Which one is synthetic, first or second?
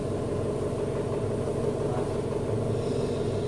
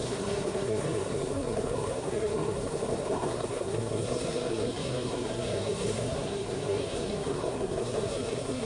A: second